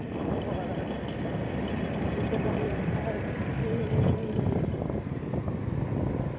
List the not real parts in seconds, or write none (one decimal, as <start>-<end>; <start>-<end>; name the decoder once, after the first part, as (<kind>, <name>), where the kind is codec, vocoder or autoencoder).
1.4-5.2 (vocoder, BigVGAN v2)